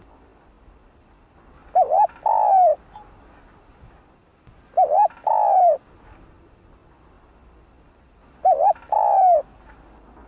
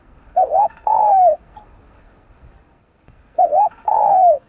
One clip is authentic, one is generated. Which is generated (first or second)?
second